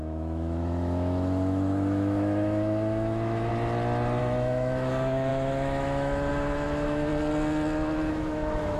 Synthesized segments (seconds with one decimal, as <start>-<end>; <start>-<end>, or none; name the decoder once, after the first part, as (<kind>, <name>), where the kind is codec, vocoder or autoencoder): 0.0-3.5 (autoencoder, DAC-VAE); 4.2-7.1; 8.1-8.8